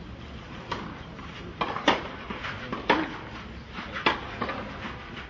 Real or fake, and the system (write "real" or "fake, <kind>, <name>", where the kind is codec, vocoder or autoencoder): real